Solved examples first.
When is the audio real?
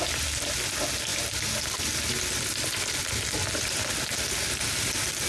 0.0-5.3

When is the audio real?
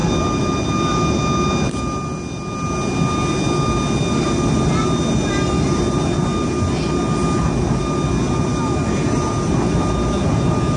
0.0-10.8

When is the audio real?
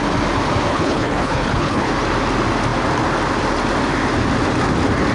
0.0-0.7; 1.9-5.1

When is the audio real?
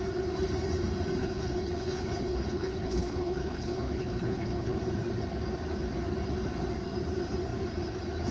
0.0-1.2; 4.8-8.3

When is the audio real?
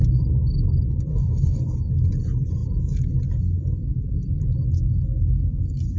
0.0-1.1; 1.6-6.0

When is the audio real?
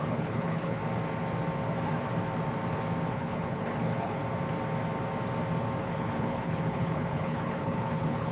0.8-3.1; 4.2-5.8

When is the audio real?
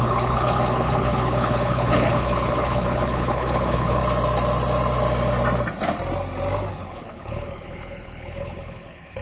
4.0-6.7